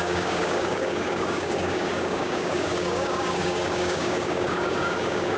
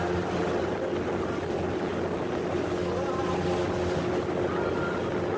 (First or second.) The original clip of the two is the second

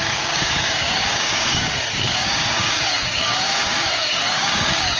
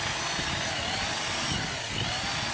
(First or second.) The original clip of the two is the second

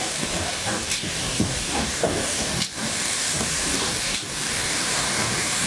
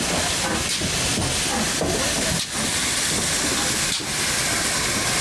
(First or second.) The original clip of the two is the second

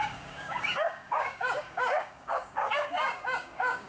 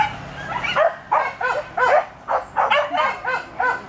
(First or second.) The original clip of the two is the second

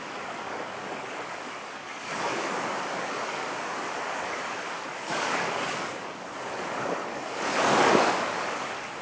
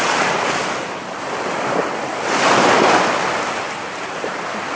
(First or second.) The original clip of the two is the second